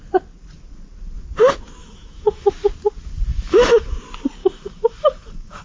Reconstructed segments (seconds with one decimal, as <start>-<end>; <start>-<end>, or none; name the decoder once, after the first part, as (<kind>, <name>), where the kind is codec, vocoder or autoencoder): 1.8-2.5 (autoencoder, DAC-VAE); 3.3-4.0; 4.4-5.6